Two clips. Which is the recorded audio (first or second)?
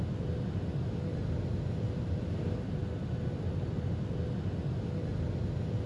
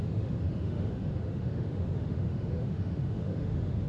first